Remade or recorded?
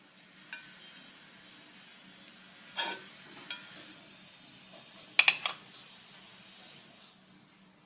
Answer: recorded